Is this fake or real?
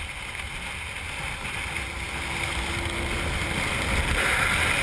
real